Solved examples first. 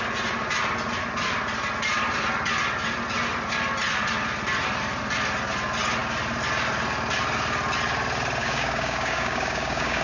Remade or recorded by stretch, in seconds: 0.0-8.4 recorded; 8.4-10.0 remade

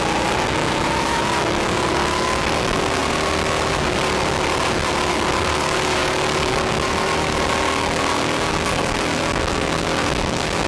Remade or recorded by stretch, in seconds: 0.0-3.0 remade; 3.0-5.1 recorded; 5.1-10.7 remade